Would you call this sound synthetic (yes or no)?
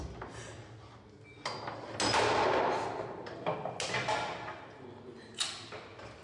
no